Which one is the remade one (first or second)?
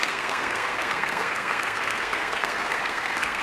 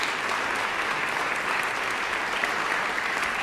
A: first